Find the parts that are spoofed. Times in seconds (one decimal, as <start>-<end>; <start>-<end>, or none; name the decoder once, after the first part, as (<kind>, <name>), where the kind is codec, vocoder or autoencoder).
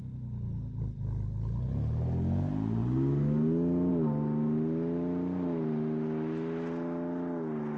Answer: none